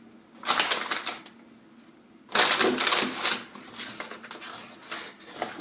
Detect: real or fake real